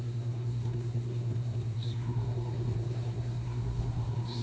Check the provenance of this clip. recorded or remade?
remade